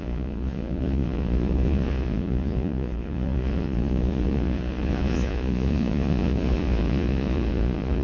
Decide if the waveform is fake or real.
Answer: fake